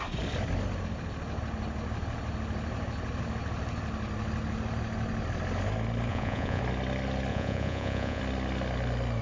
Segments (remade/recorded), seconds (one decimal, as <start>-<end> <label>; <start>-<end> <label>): 0.0-6.1 recorded; 6.1-6.6 remade; 6.6-7.3 recorded; 7.3-8.2 remade; 8.2-9.2 recorded

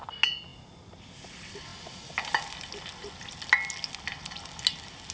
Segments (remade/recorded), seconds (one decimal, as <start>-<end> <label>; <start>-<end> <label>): 0.0-5.1 recorded

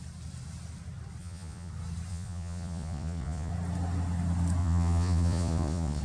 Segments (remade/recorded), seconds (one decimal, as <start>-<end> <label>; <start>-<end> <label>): 0.0-1.2 recorded; 1.2-1.7 remade; 1.7-2.1 recorded; 2.1-3.5 remade; 3.5-4.6 recorded; 4.6-6.0 remade